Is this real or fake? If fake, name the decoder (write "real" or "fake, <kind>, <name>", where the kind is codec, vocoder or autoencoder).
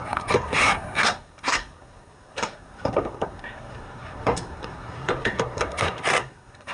fake, codec, SNAC